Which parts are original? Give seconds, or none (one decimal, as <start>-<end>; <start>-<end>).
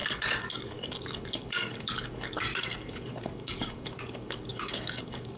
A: none